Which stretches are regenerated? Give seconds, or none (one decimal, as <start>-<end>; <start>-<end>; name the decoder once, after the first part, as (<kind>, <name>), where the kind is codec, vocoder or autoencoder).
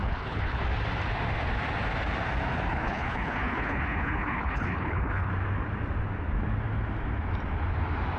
0.0-0.6 (codec, HILCodec); 2.7-5.3